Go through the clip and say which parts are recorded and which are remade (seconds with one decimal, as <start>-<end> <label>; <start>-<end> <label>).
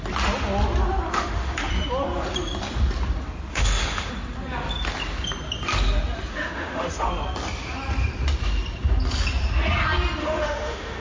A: 0.0-1.1 recorded; 1.1-1.7 remade; 1.7-3.5 recorded; 3.5-4.1 remade; 4.1-6.3 recorded; 6.3-7.1 remade; 7.1-10.2 recorded; 10.2-11.0 remade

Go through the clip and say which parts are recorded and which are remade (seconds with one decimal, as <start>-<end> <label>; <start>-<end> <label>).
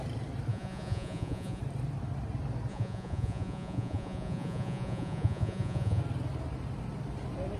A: 0.0-0.5 recorded; 0.5-1.6 remade; 1.6-2.7 recorded; 2.7-6.0 remade; 6.0-7.6 recorded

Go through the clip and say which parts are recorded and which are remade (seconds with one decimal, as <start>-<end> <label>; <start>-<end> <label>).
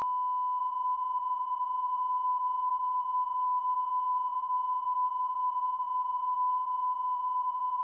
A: 0.0-0.6 recorded; 0.6-7.8 remade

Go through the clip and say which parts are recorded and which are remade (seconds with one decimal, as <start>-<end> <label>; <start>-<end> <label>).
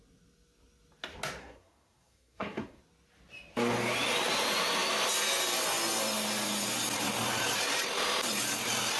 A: 0.0-1.4 recorded; 1.4-2.8 remade; 2.8-9.0 recorded